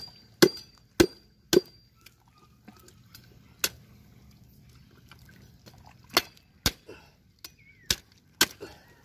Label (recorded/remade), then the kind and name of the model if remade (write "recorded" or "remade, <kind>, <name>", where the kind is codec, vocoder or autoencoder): recorded